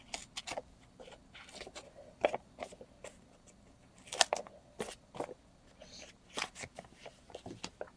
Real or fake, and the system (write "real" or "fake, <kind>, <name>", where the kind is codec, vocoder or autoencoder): real